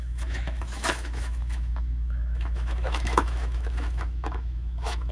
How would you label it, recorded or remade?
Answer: remade